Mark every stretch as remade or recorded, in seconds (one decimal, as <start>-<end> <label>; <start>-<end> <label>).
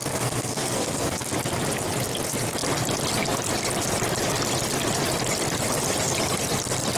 0.0-1.3 remade; 1.3-7.0 recorded